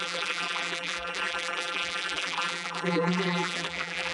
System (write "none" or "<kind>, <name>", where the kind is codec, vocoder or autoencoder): vocoder, BigVGAN v2